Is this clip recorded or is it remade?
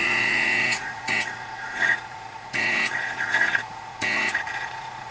remade